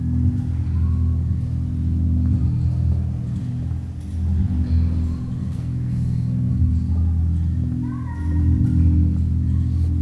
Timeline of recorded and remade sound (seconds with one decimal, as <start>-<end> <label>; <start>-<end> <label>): 0.0-5.4 recorded; 5.4-6.7 remade; 6.7-10.0 recorded